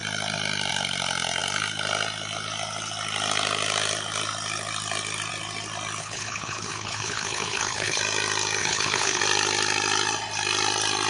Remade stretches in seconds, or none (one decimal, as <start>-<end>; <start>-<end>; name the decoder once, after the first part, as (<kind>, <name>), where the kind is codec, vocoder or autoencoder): 6.0-8.0 (codec, HILCodec); 8.6-9.2